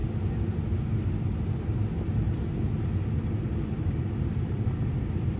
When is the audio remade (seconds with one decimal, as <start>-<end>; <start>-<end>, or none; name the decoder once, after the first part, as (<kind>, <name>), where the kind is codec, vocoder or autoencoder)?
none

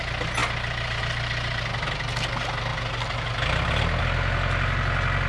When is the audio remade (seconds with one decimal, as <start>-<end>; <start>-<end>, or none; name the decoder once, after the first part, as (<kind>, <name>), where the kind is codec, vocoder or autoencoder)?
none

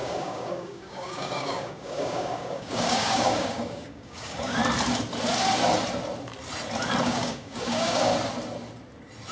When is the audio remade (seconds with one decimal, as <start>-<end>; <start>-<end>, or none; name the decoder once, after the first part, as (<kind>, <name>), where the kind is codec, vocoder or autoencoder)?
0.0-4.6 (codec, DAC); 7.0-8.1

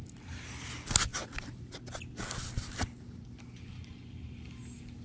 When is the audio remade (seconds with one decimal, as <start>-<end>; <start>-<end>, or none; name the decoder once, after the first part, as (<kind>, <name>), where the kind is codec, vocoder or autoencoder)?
none